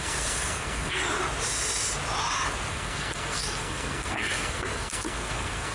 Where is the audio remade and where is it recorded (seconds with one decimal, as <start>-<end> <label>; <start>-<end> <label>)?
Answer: 0.0-1.0 remade; 1.0-2.7 recorded; 2.7-5.7 remade